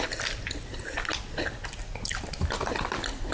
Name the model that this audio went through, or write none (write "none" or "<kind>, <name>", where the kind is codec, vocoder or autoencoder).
none